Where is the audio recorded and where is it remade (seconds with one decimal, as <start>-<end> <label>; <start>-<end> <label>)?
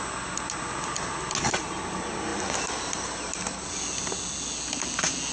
0.0-5.3 recorded